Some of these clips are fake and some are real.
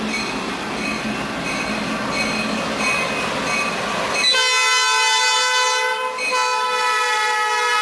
real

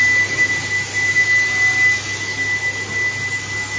real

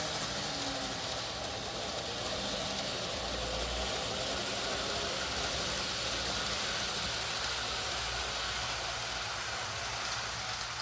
real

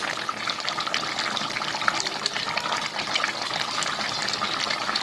real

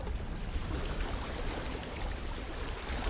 real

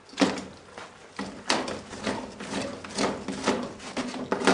real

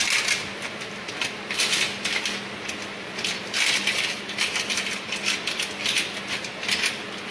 real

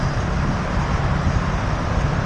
real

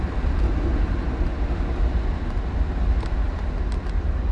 real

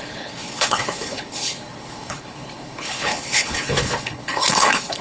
fake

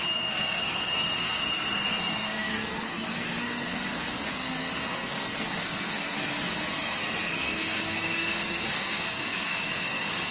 fake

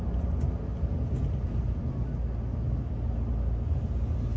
real